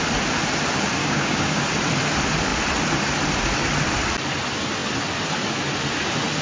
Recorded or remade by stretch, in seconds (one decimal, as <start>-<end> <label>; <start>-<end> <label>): 0.0-1.0 recorded; 1.0-1.6 remade; 1.6-6.4 recorded